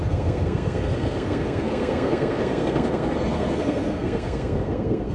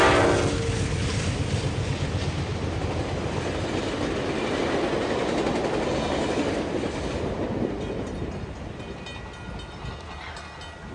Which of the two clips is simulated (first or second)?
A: first